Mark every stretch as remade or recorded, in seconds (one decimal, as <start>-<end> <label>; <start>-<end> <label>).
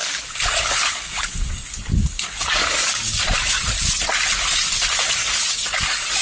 0.0-3.7 remade; 3.7-5.2 recorded; 5.2-6.2 remade